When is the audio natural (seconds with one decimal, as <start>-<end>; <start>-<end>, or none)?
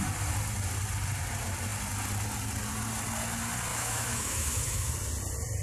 0.0-3.7; 4.9-5.6